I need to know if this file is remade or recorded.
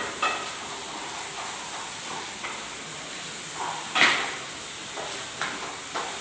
recorded